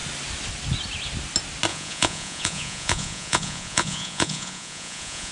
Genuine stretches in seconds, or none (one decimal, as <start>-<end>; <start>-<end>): 0.0-1.7